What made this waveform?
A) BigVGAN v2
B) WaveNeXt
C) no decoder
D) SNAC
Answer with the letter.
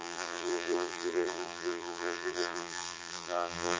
A